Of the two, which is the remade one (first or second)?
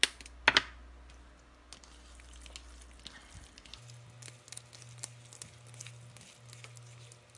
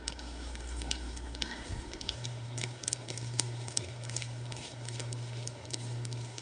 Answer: second